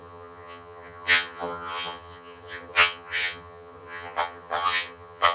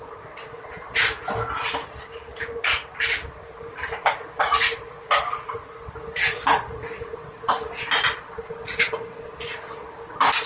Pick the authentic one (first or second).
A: second